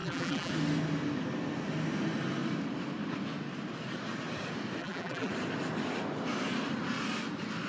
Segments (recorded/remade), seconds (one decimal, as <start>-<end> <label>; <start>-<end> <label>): 0.0-0.5 remade; 0.5-4.8 recorded; 4.8-5.3 remade; 5.3-7.7 recorded